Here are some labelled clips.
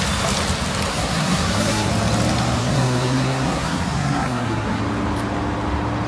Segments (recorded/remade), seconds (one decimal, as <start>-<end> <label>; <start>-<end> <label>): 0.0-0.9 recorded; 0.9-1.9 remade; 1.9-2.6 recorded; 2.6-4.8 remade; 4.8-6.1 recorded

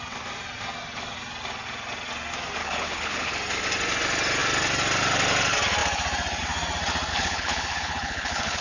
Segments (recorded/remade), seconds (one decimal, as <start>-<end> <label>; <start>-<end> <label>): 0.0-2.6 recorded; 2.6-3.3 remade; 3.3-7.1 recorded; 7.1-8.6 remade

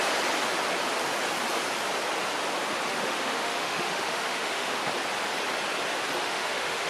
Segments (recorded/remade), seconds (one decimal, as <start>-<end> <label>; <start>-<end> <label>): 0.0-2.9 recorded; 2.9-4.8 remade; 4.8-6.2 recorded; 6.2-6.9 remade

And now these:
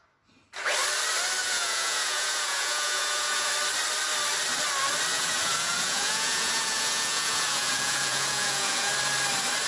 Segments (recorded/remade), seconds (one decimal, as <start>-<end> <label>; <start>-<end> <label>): 0.0-1.4 recorded; 1.4-3.5 remade; 3.5-5.1 recorded; 5.1-8.9 remade; 8.9-9.7 recorded

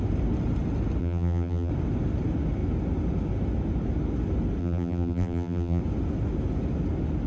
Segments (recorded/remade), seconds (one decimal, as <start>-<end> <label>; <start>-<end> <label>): 0.0-1.0 recorded; 1.0-1.7 remade; 1.7-4.6 recorded; 4.6-5.8 remade; 5.8-7.3 recorded